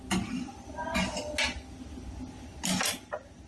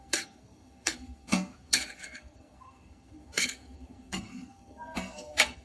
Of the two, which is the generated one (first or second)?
second